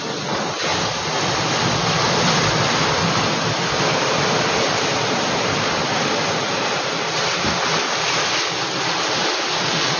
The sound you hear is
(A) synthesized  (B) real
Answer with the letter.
A